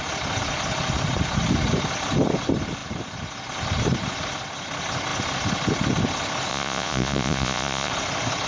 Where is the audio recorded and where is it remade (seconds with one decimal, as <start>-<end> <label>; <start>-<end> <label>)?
0.0-6.5 recorded; 6.5-7.9 remade; 7.9-8.5 recorded